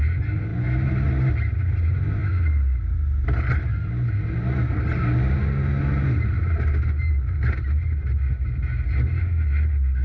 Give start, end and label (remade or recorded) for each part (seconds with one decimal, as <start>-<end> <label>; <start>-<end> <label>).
0.0-10.0 recorded